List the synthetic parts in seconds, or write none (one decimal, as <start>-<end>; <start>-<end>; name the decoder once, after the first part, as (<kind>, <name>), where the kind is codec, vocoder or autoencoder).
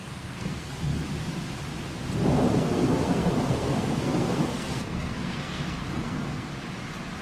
0.0-0.9 (codec, SNAC); 2.5-6.5